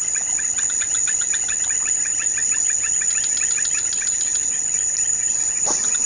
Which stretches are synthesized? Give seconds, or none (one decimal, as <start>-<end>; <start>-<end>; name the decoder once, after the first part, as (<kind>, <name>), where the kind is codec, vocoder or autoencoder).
none